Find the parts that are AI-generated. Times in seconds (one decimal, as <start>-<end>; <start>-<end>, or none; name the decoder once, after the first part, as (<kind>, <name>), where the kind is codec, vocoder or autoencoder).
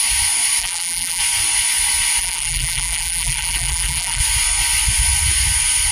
0.6-1.2 (vocoder, BigVGAN v2); 2.2-4.2